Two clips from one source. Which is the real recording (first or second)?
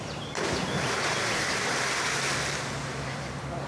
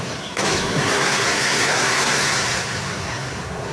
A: first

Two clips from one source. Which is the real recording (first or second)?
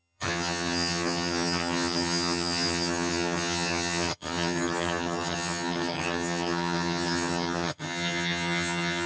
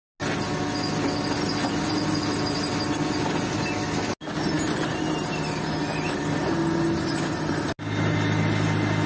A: second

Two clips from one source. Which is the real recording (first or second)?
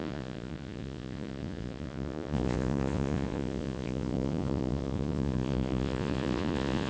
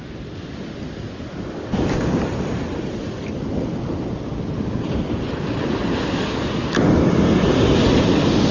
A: second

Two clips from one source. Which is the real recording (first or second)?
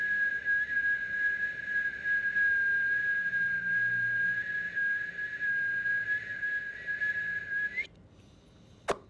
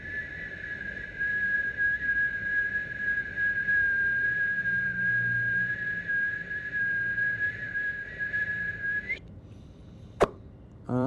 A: first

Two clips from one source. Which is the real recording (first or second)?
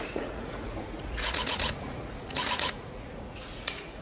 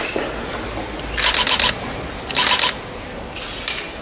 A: second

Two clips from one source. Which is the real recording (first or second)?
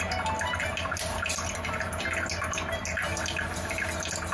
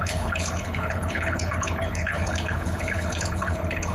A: first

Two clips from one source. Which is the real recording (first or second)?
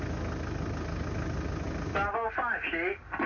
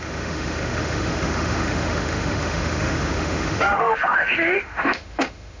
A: first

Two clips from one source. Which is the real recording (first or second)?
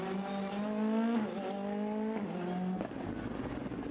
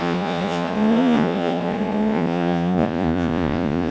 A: first